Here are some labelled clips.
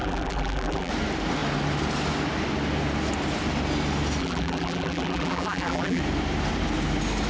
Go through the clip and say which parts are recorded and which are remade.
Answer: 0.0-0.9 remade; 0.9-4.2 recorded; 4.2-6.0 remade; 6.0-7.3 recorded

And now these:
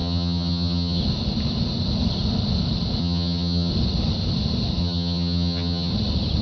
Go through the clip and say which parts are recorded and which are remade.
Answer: 0.0-1.0 remade; 1.0-3.0 recorded; 3.0-3.7 remade; 3.7-4.8 recorded; 4.8-5.9 remade; 5.9-6.4 recorded

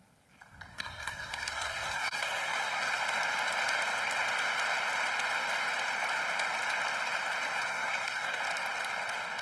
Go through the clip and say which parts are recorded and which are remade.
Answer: 0.0-0.7 recorded; 0.7-3.0 remade; 3.0-7.7 recorded; 7.7-8.4 remade; 8.4-9.4 recorded

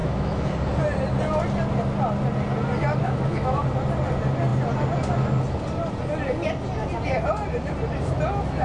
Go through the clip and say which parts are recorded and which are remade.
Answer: 0.0-0.5 remade; 0.5-3.0 recorded; 3.0-3.6 remade; 3.6-8.6 recorded

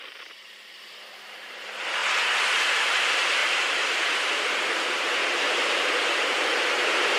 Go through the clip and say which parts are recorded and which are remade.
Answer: 0.0-2.0 remade; 2.0-2.5 recorded; 2.5-7.2 remade